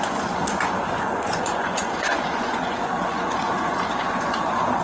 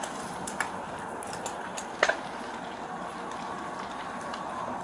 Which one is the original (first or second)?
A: second